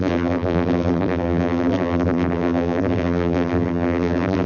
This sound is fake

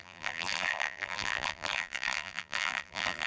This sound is fake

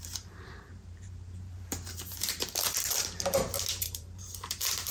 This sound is fake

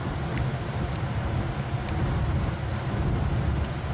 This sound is real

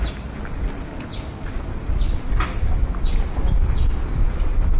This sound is real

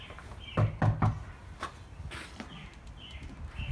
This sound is real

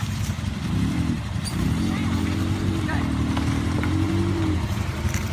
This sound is fake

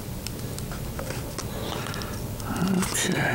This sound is real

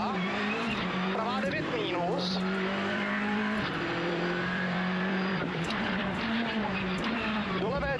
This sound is fake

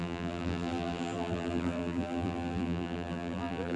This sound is fake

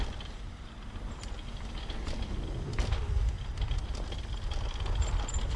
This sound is real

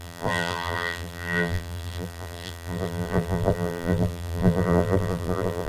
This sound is fake